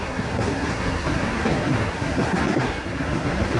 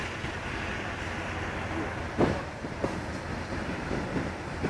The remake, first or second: first